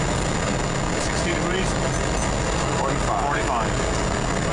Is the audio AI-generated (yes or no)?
no